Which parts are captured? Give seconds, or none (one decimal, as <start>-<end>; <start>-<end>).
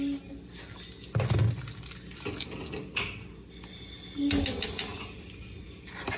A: 0.0-6.2